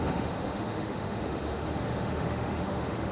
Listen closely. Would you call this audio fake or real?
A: fake